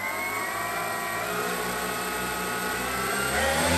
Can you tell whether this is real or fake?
real